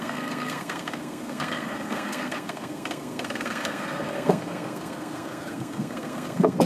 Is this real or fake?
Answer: fake